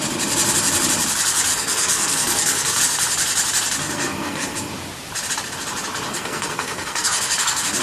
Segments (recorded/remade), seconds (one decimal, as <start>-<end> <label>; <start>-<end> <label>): 0.0-1.5 recorded; 1.5-2.8 remade; 2.8-3.8 recorded; 3.8-4.7 remade; 4.7-6.1 recorded; 6.1-7.8 remade